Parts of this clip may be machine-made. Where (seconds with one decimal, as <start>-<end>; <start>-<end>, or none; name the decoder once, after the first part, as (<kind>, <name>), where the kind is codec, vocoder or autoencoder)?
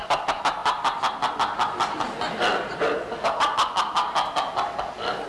none